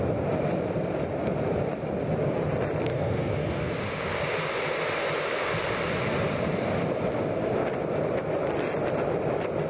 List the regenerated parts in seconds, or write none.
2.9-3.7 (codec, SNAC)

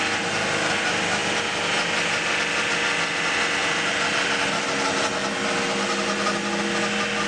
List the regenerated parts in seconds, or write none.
none

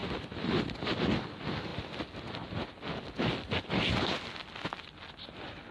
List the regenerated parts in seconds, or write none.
none